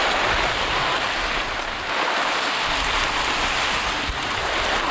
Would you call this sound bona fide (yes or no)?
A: yes